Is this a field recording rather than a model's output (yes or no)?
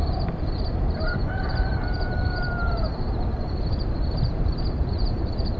no